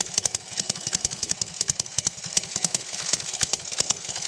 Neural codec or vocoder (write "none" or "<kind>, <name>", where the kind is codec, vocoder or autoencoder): codec, SNAC